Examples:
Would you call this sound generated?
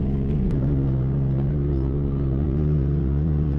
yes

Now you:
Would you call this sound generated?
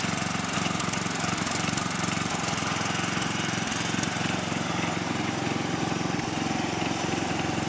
yes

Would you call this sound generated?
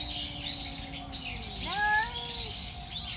no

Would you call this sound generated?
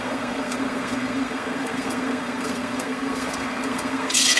yes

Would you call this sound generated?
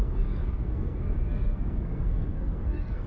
yes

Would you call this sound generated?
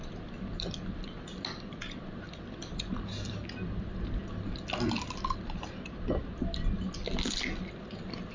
no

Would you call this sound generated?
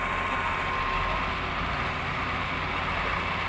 no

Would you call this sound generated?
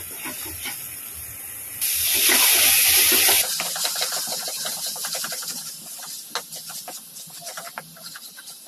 no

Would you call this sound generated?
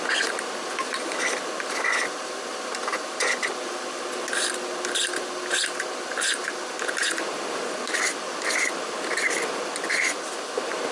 no